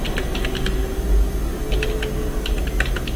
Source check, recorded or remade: recorded